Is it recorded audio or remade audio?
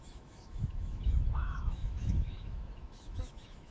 remade